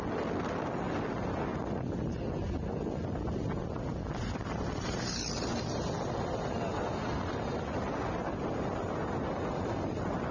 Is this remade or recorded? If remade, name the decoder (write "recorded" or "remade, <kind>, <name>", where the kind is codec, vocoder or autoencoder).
recorded